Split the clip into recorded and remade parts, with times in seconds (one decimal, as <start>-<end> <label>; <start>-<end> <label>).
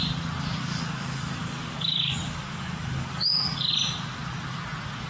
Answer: 0.0-0.6 recorded; 0.6-3.7 remade; 3.7-5.1 recorded